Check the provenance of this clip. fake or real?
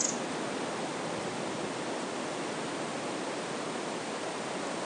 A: real